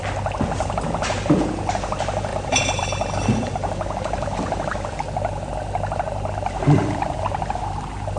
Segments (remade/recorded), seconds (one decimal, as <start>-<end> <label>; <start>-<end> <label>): 0.0-2.3 recorded; 2.3-3.5 remade; 3.5-6.8 recorded; 6.8-7.4 remade; 7.4-8.2 recorded